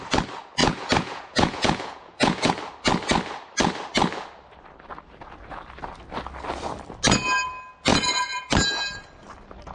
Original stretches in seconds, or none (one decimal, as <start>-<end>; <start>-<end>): 0.0-0.6; 2.5-7.9; 8.5-9.7